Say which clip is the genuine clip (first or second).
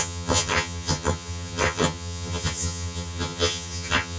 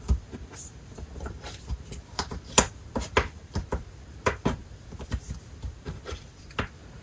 second